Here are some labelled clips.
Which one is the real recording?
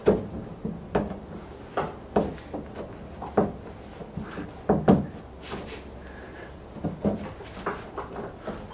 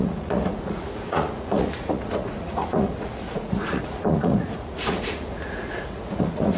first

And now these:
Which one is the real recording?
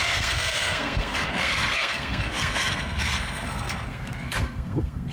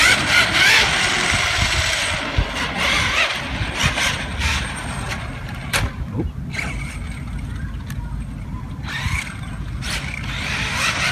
second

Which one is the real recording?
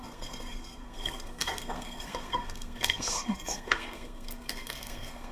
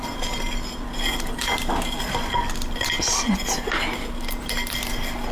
second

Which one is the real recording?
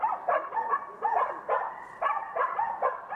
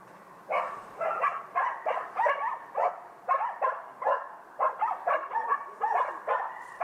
first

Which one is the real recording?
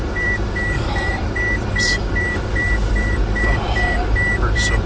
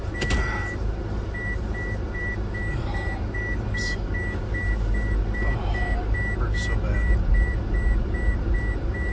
second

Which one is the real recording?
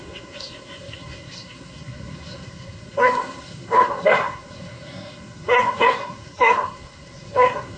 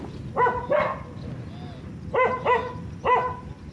second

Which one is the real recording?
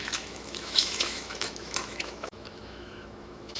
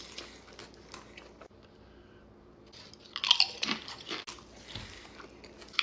second